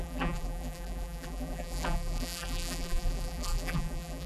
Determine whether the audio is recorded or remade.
remade